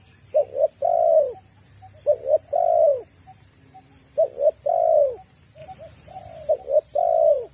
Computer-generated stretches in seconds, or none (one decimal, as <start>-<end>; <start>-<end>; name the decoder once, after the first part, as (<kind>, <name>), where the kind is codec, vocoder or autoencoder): 0.0-7.5 (vocoder, BigVGAN v2)